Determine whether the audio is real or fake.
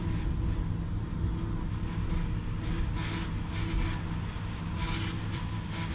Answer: real